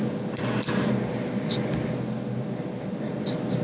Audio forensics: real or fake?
real